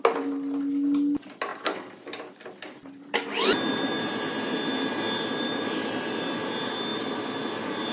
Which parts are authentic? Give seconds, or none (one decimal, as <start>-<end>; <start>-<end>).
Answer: 0.0-1.5; 6.2-7.9